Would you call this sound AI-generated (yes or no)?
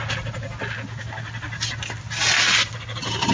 no